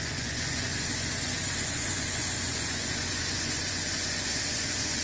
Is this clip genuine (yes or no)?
no